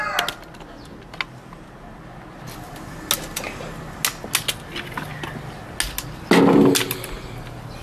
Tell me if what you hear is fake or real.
real